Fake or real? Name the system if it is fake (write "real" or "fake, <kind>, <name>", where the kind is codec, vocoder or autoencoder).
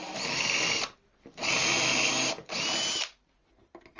real